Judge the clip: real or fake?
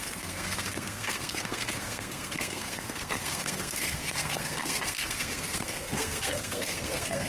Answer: fake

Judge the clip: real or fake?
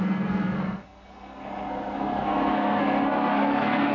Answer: fake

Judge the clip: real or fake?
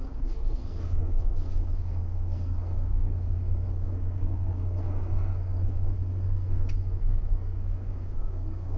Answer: fake